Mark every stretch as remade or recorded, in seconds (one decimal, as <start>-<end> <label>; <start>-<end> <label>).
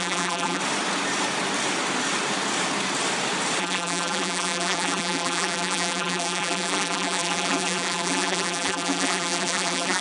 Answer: 0.0-0.6 remade; 0.6-3.6 recorded; 3.6-10.0 remade